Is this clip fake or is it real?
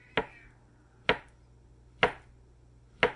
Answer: real